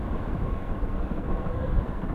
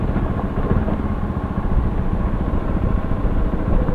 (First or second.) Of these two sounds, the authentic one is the second